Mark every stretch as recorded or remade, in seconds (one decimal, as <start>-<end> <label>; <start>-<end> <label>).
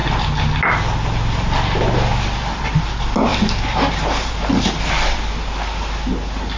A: 0.0-2.1 recorded; 2.1-2.7 remade; 2.7-3.3 recorded; 3.3-5.3 remade; 5.3-6.6 recorded